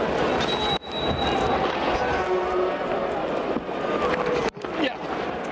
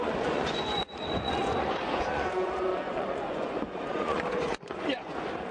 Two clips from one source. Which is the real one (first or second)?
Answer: first